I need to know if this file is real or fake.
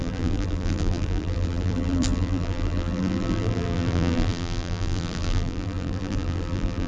fake